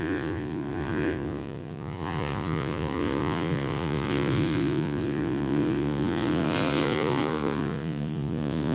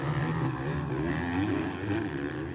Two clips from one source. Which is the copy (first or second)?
first